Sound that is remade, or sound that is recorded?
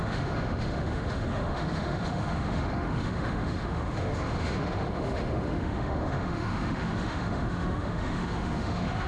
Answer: remade